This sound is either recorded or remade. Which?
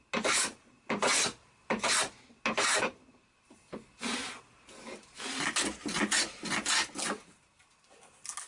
recorded